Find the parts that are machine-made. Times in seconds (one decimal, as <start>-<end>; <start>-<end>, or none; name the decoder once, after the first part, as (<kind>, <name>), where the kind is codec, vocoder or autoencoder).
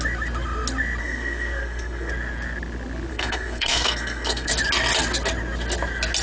1.0-2.1 (codec, SNAC); 3.1-4.5